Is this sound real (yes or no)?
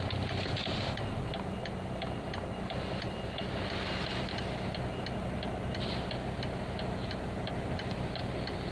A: yes